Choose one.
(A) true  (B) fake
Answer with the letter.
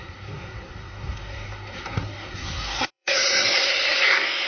B